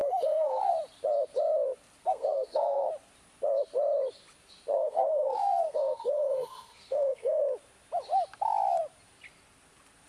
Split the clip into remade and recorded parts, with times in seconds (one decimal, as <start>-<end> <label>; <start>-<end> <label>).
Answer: 0.0-0.7 remade; 0.7-2.0 recorded; 2.0-2.9 remade; 2.9-4.7 recorded; 4.7-7.4 remade; 7.4-10.1 recorded